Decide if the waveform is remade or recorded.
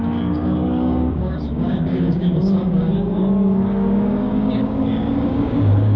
remade